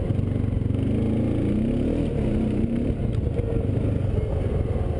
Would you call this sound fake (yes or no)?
no